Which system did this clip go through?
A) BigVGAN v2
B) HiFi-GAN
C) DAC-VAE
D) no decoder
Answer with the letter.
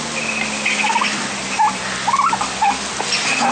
D